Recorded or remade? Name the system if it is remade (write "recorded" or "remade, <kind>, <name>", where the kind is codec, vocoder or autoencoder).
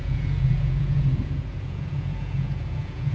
remade, vocoder, Vocos